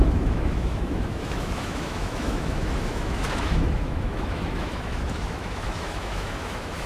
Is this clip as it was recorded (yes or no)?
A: no